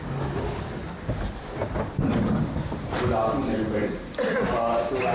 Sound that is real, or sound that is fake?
real